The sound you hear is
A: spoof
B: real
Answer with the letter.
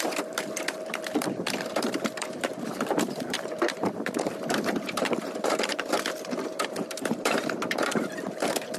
A